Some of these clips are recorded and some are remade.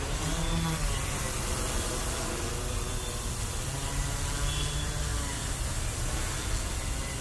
recorded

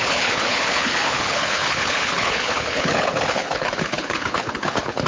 remade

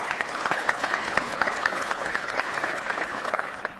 remade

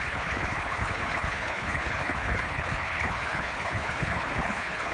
remade